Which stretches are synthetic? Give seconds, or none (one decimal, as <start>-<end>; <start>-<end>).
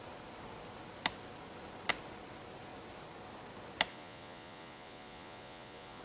3.9-6.0